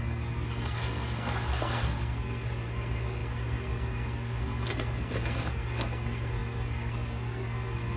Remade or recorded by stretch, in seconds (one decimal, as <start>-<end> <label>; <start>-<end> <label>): 0.0-8.0 remade